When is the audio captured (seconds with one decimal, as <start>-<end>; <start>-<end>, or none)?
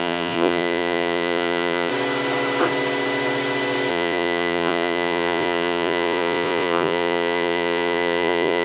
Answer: 1.9-3.9